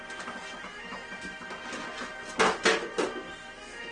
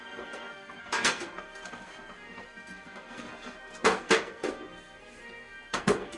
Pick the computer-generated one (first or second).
second